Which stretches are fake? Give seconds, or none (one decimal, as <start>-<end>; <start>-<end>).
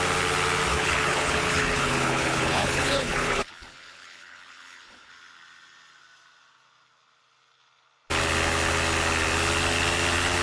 0.7-5.1